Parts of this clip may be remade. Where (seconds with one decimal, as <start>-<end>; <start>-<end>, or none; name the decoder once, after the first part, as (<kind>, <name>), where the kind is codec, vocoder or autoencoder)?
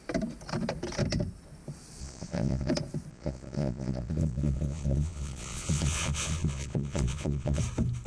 2.0-2.7 (vocoder, Vocos); 3.1-7.6